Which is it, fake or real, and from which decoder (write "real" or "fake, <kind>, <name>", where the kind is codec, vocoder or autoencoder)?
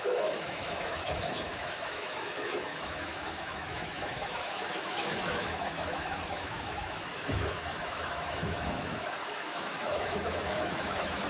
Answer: fake, autoencoder, DAC-VAE